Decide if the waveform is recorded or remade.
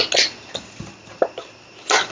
recorded